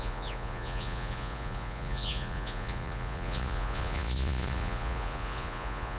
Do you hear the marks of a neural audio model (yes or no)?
yes